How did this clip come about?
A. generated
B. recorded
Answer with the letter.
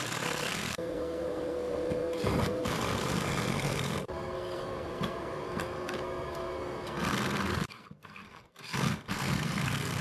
A